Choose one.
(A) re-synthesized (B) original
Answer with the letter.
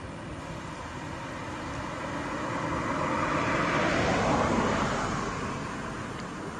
B